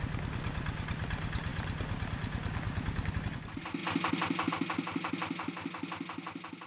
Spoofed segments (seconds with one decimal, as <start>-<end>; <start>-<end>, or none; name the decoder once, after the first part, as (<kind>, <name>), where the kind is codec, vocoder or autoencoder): none